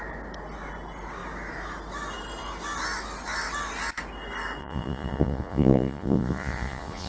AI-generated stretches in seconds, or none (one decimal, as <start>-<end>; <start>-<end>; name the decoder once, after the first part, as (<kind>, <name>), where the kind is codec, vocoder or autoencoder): 4.6-7.1 (vocoder, Vocos)